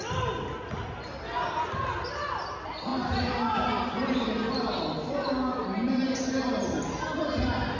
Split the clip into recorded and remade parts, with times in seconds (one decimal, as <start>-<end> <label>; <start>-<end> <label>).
0.0-5.5 recorded; 5.5-6.9 remade; 6.9-7.8 recorded

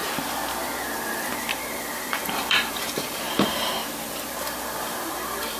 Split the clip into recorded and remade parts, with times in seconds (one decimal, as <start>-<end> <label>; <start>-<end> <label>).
0.0-1.5 recorded; 1.5-3.8 remade; 3.8-4.4 recorded; 4.4-5.6 remade

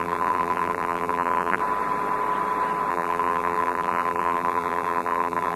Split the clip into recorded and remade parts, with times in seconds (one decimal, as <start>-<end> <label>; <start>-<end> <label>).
0.0-1.6 remade; 1.6-2.9 recorded; 2.9-5.6 remade

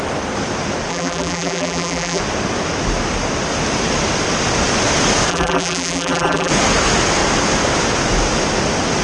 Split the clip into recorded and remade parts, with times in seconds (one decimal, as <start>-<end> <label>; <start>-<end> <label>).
0.0-0.9 recorded; 0.9-2.2 remade; 2.2-5.3 recorded; 5.3-6.5 remade; 6.5-9.0 recorded

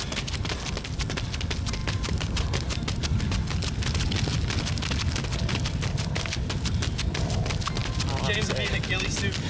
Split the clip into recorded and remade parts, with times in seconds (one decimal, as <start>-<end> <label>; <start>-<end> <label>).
0.0-1.8 recorded; 1.8-3.2 remade; 3.2-9.5 recorded